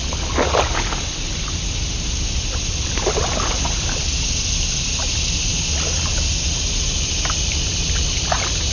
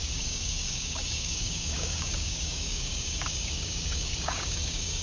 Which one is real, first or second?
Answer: first